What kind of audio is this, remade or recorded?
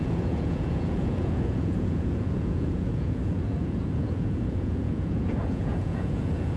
remade